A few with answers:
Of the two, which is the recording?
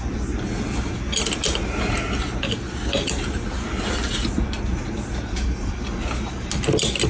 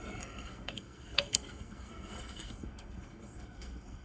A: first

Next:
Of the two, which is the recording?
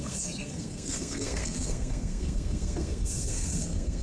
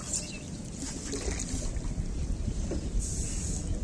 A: second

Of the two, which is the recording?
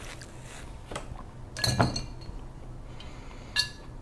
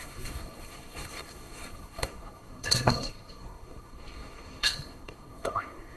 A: first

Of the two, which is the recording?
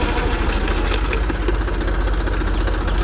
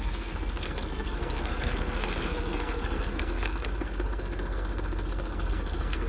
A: first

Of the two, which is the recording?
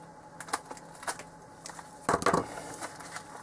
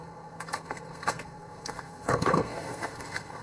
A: first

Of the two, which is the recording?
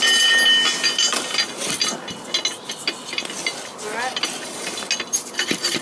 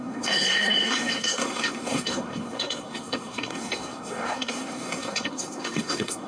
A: first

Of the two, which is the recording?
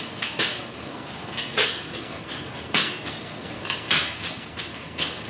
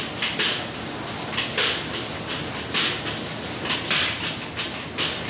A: second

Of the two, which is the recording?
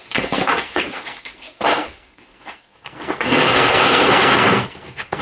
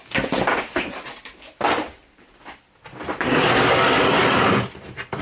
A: second